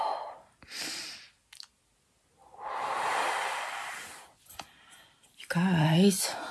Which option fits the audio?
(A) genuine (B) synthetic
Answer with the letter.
A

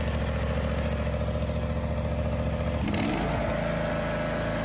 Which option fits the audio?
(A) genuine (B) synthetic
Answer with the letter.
A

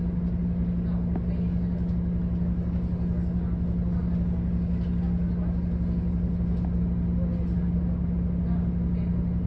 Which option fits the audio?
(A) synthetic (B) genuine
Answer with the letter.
B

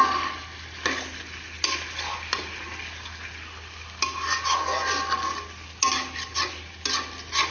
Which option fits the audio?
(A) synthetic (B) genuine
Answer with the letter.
B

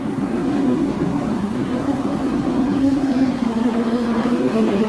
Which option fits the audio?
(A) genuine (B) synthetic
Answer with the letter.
B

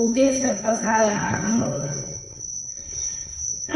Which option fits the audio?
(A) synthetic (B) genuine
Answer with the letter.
A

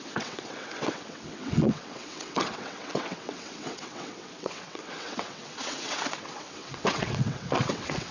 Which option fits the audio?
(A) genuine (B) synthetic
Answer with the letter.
B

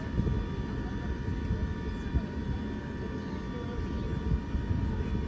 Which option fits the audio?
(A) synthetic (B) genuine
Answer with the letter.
B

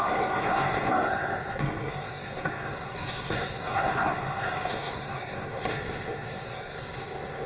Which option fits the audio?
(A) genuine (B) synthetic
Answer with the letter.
B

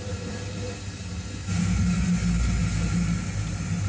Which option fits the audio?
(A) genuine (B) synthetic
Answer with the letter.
A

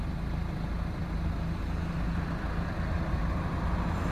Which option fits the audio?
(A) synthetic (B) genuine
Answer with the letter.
B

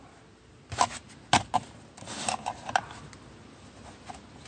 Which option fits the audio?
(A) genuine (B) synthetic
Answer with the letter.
A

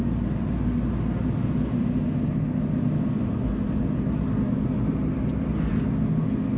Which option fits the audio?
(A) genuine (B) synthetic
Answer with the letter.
A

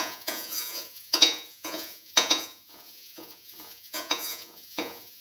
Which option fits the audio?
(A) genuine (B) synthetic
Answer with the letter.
B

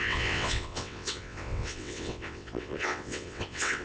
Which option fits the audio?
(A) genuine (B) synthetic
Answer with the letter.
B